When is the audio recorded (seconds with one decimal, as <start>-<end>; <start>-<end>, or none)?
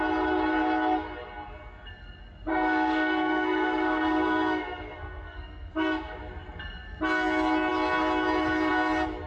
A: 0.0-2.5; 6.2-9.3